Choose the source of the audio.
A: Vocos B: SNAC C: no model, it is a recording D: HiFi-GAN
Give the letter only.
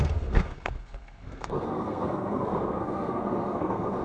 B